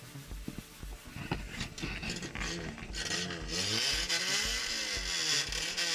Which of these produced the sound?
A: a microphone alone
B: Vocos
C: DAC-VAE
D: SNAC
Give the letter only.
A